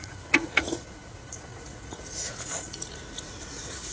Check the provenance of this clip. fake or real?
fake